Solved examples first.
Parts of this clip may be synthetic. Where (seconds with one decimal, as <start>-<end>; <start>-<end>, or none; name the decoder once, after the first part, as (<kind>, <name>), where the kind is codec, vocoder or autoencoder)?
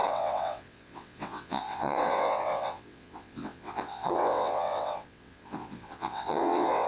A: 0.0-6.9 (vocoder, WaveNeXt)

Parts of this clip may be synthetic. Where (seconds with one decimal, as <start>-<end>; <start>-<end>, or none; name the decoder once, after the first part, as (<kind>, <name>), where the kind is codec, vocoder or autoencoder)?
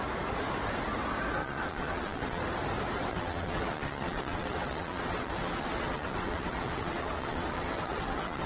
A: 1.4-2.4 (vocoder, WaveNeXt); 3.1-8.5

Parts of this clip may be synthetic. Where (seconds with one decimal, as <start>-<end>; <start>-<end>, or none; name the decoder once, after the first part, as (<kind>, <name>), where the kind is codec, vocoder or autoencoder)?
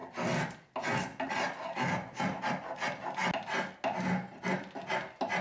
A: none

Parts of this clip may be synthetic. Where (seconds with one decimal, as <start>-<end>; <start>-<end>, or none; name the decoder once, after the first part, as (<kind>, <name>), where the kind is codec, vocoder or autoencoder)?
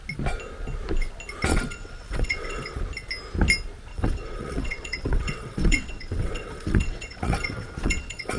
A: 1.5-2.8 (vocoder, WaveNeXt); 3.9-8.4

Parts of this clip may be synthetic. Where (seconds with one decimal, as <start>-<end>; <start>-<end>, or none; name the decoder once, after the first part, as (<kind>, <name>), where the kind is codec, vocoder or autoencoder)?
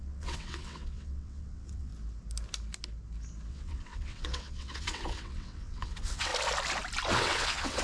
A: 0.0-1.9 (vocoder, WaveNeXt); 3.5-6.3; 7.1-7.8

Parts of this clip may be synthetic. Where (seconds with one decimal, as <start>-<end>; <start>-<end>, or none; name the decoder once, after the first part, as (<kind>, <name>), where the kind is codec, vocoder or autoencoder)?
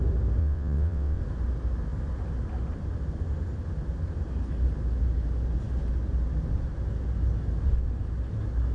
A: 0.4-1.2 (vocoder, WaveNeXt)